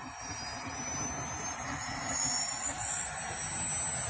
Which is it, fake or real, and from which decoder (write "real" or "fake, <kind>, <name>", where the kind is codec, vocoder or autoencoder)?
real